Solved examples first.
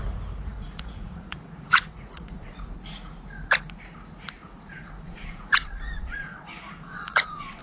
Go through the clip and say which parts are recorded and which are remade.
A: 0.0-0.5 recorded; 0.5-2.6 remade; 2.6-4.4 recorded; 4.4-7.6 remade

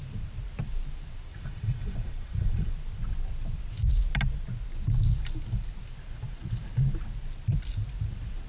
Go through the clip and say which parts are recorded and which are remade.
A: 0.0-1.3 recorded; 1.3-2.7 remade; 2.7-8.5 recorded

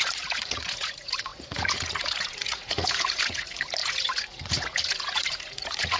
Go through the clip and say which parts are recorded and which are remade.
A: 0.0-6.0 remade

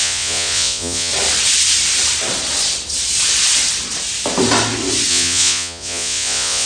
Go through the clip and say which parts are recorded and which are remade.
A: 0.0-1.1 remade; 1.1-5.1 recorded; 5.1-6.7 remade

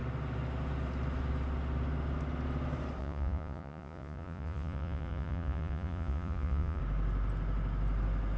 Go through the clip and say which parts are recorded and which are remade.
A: 0.0-3.0 recorded; 3.0-6.8 remade; 6.8-8.4 recorded

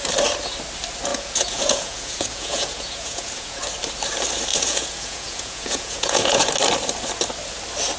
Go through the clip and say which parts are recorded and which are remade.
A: 0.0-1.1 recorded; 1.1-3.6 remade; 3.6-4.5 recorded; 4.5-6.5 remade; 6.5-8.0 recorded

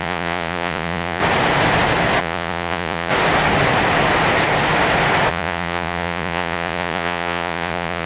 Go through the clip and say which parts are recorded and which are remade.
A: 0.0-1.2 remade; 1.2-2.2 recorded; 2.2-3.1 remade; 3.1-5.3 recorded; 5.3-8.1 remade

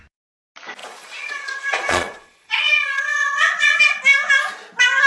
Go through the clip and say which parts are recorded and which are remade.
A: 0.0-0.8 recorded; 0.8-3.8 remade; 3.8-5.1 recorded